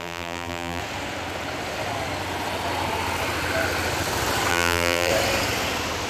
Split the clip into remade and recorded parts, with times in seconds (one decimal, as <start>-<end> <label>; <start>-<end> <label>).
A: 0.0-0.8 remade; 0.8-4.5 recorded; 4.5-5.1 remade; 5.1-6.1 recorded